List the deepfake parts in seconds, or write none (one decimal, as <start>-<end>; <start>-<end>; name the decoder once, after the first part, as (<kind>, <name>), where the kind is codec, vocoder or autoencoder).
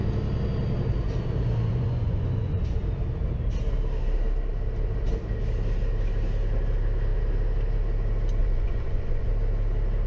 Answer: 1.7-2.8 (vocoder, Vocos); 8.4-9.3